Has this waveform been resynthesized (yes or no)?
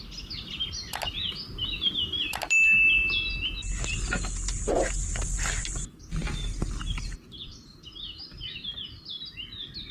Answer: no